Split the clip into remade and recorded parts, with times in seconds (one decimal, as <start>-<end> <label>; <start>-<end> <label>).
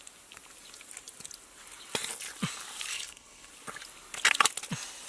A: 0.0-2.9 recorded; 2.9-3.5 remade; 3.5-5.1 recorded